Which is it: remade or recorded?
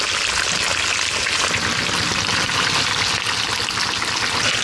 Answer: recorded